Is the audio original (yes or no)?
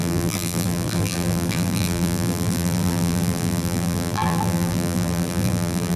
no